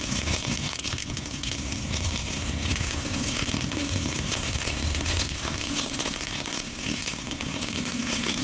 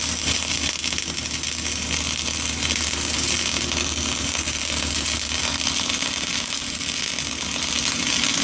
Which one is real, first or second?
second